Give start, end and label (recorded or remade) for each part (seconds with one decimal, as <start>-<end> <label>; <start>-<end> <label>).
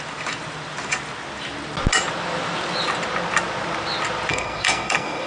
0.0-4.3 recorded; 4.3-5.3 remade